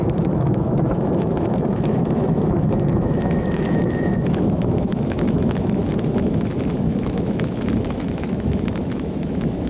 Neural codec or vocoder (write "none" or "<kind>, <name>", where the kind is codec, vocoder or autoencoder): autoencoder, DAC-VAE